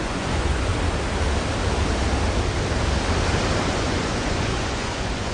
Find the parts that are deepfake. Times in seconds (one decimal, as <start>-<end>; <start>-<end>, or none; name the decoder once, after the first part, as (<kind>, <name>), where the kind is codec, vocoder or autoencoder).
0.0-0.7 (vocoder, Vocos); 3.7-5.3